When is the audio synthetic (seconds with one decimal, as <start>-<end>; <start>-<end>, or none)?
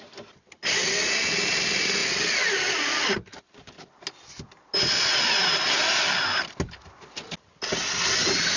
none